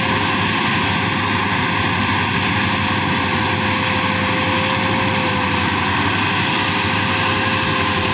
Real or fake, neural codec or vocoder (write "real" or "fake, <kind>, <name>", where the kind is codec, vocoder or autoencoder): real